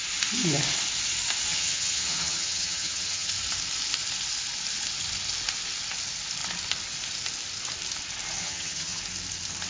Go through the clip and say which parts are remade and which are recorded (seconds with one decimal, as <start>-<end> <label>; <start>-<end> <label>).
0.0-1.5 recorded; 1.5-3.3 remade; 3.3-8.4 recorded; 8.4-9.0 remade; 9.0-9.7 recorded